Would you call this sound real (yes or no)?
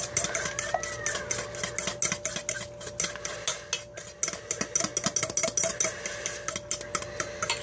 yes